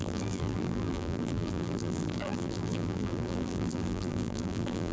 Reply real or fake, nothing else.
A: fake